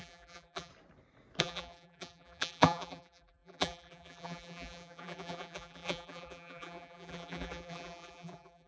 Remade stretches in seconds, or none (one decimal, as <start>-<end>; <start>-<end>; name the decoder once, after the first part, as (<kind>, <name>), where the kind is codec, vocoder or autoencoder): 0.0-0.7 (vocoder, BigVGAN v2); 1.4-8.7